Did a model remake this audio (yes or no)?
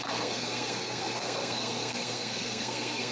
yes